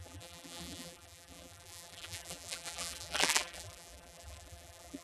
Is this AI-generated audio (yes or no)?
yes